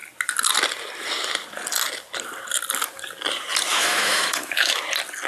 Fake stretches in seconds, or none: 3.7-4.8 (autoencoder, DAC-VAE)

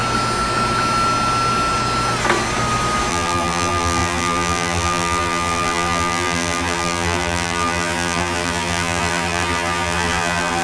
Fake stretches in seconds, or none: 3.1-10.6 (vocoder, BigVGAN v2)

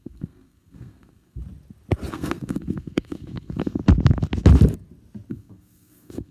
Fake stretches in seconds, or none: 0.0-1.4 (codec, SNAC); 2.1-3.8; 5.3-6.3